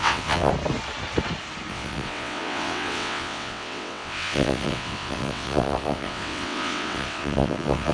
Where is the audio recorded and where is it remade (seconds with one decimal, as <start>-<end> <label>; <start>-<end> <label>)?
0.0-0.5 remade; 0.5-1.7 recorded; 1.7-7.9 remade